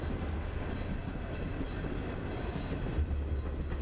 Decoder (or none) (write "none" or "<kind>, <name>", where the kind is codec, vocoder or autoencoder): none